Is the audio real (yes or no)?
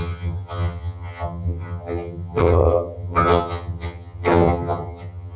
no